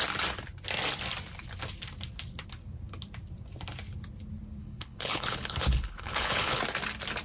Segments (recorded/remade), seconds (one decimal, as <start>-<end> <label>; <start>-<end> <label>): 0.0-4.6 recorded; 4.6-6.6 remade; 6.6-7.2 recorded